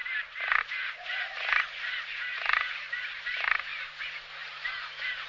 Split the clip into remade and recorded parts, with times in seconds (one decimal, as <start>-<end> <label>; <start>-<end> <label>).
0.0-5.3 recorded